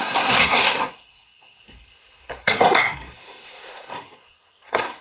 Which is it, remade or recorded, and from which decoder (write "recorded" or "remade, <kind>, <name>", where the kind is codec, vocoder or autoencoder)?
remade, codec, SNAC